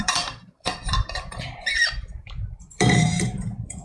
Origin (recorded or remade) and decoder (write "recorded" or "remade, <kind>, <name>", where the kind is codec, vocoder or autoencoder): remade, vocoder, BigVGAN v2